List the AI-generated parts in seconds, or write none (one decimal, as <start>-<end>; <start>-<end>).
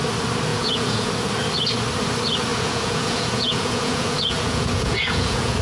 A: 0.5-1.1; 2.5-5.6